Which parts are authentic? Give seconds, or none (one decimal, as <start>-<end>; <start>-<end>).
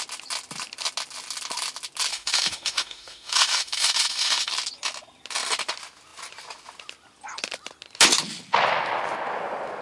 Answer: 0.0-2.1; 4.5-9.8